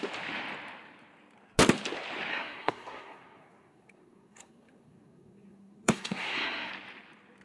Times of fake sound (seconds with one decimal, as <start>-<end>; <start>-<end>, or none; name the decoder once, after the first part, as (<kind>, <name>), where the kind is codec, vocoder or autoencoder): 2.3-6.7 (codec, SNAC)